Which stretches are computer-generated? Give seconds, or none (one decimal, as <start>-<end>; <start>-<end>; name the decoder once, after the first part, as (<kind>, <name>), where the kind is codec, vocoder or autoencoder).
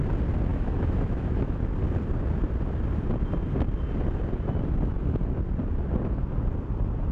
0.5-1.6 (autoencoder, DAC-VAE)